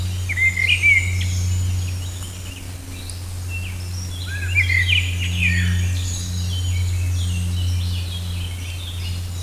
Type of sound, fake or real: real